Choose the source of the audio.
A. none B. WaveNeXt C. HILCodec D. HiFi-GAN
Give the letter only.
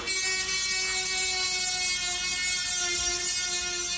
A